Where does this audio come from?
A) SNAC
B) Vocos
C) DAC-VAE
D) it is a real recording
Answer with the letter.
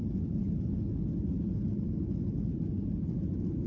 D